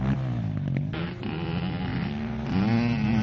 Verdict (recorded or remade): recorded